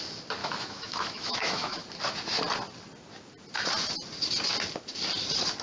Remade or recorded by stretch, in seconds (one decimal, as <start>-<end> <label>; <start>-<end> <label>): 0.0-0.4 recorded; 0.4-1.8 remade; 1.8-5.6 recorded